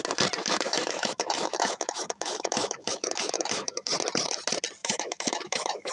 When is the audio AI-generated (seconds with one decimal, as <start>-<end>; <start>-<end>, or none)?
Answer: 0.4-3.9; 4.8-5.9